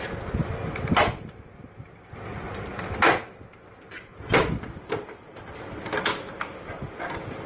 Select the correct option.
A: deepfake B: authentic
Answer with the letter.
B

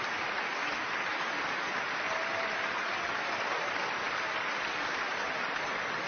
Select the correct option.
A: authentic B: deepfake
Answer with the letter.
A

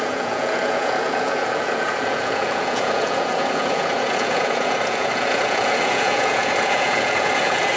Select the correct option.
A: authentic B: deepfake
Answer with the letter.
B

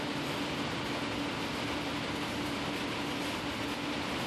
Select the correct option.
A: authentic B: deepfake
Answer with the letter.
A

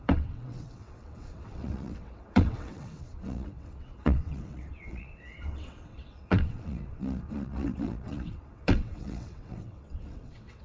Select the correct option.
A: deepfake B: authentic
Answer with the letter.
A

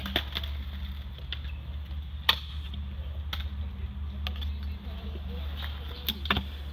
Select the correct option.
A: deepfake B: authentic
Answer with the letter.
B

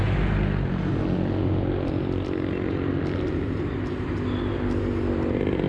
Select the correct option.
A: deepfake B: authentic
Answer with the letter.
B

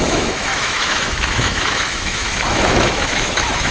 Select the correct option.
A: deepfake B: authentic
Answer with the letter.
A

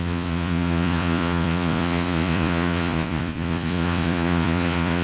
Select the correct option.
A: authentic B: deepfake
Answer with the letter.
B